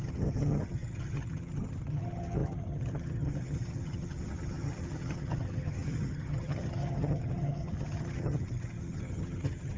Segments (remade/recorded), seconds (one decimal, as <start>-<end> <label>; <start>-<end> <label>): 0.0-9.8 remade